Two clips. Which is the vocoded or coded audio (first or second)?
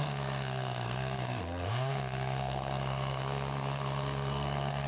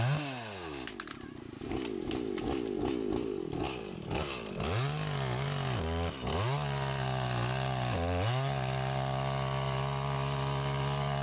first